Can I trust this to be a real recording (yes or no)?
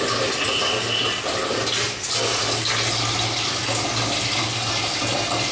yes